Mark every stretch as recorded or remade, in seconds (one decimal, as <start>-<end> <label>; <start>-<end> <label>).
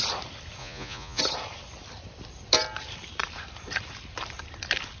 0.0-0.6 recorded; 0.6-1.2 remade; 1.2-5.0 recorded